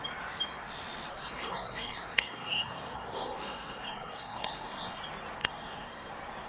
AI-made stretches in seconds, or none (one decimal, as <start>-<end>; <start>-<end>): 1.1-5.0; 5.4-6.1